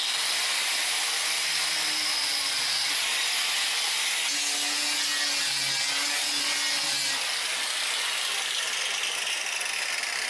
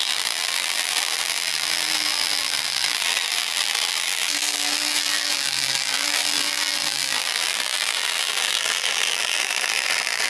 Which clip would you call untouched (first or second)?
first